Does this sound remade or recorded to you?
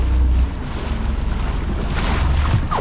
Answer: recorded